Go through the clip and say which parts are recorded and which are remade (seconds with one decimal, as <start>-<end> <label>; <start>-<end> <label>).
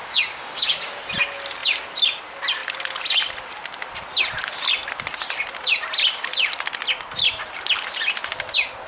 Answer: 0.0-1.0 remade; 1.0-8.9 recorded